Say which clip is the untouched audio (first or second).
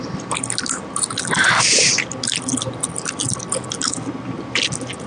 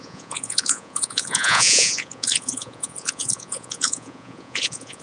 first